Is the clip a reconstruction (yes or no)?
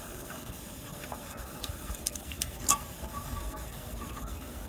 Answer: yes